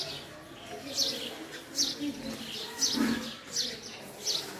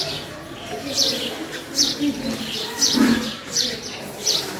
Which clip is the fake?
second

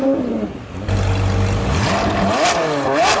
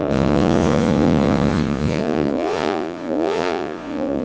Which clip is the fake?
second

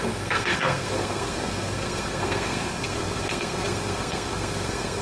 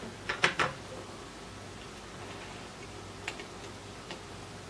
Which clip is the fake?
first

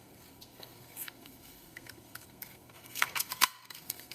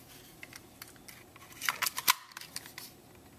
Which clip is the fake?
first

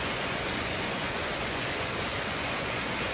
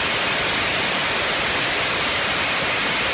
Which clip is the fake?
first